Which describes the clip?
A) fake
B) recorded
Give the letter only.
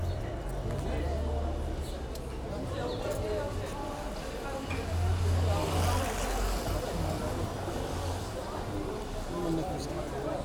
B